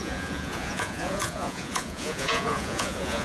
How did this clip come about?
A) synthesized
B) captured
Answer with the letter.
A